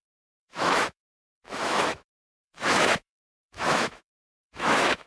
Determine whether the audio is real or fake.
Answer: fake